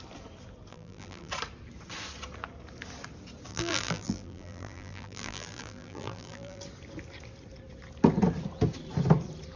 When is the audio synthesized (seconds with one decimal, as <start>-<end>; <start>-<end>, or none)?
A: 0.7-1.3; 3.5-6.6